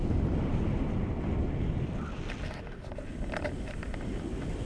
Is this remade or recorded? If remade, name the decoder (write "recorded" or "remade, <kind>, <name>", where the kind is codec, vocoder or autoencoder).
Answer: recorded